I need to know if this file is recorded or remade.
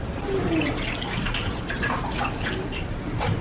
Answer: recorded